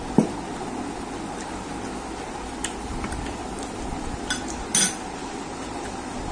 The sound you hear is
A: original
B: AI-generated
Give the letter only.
A